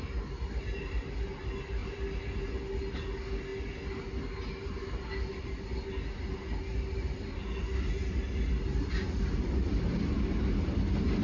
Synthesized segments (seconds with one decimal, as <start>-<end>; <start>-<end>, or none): none